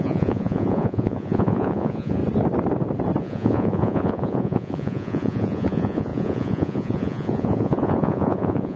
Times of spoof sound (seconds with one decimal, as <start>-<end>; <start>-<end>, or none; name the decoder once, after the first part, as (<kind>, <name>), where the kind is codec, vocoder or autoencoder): 0.0-2.2 (vocoder, Vocos); 3.2-8.8